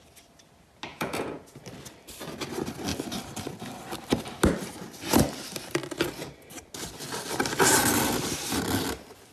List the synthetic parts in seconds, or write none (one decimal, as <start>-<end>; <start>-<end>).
0.9-1.6